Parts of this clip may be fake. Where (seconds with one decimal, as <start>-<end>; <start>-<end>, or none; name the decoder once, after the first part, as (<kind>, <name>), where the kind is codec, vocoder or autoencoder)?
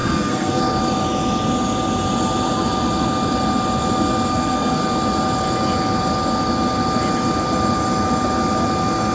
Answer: 0.0-0.6 (codec, SNAC); 4.3-4.8